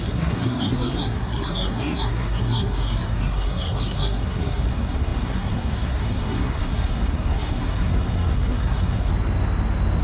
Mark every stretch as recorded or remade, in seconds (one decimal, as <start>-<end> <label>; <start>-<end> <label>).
0.0-9.1 remade; 9.1-10.0 recorded